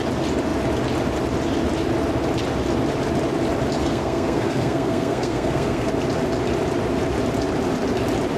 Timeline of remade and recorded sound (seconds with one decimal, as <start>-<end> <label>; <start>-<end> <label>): 0.0-3.8 recorded; 3.8-5.9 remade; 5.9-8.4 recorded